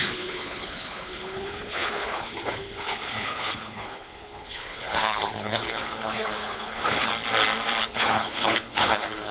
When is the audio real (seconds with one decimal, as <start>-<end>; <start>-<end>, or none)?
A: 7.1-7.8

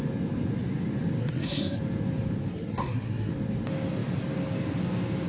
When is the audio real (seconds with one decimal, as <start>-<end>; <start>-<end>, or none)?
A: 0.0-1.2; 1.8-2.5; 3.3-5.3

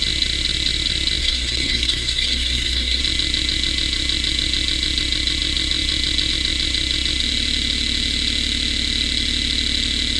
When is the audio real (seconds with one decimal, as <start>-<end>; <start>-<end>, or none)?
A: 0.0-1.2; 3.0-10.2

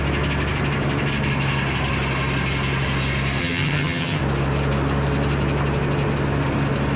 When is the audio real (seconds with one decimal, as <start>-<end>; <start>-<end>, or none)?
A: 0.0-3.4; 4.2-7.0

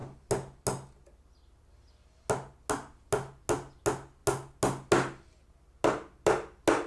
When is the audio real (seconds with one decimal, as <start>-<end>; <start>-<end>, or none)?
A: 0.0-6.9

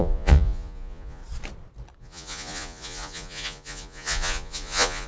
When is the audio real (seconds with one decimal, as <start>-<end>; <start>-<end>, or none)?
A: 1.2-2.0

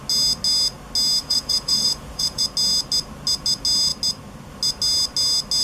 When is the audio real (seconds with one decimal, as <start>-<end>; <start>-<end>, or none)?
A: 0.0-1.2; 2.4-5.6

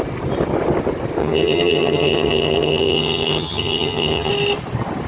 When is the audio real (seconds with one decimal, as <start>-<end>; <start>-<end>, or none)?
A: 0.0-1.2; 4.3-5.1